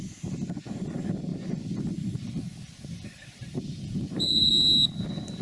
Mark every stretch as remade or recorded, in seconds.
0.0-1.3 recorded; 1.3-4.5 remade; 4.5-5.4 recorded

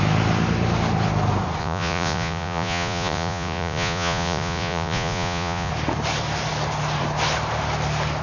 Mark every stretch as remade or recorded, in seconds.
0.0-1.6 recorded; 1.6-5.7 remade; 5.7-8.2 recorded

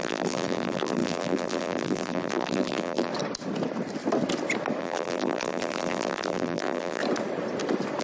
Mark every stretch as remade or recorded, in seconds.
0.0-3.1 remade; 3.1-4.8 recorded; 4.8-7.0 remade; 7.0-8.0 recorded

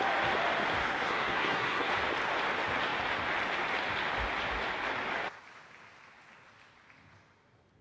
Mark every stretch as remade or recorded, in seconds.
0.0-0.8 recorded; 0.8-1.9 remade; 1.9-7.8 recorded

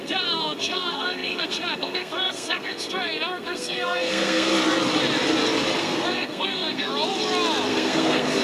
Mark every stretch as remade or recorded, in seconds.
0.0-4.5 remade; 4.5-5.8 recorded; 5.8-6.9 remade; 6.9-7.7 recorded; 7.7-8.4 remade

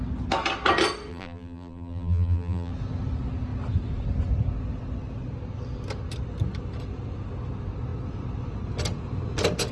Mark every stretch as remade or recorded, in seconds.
0.0-1.1 recorded; 1.1-2.7 remade; 2.7-9.7 recorded